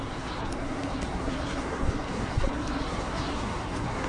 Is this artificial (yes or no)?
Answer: yes